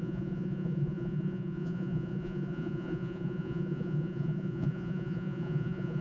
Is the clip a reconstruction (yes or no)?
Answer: yes